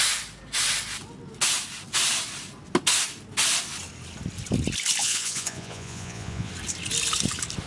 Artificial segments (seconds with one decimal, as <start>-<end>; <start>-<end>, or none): 5.0-6.5

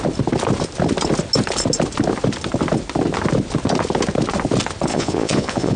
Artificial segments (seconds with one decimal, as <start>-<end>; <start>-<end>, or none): 4.9-5.8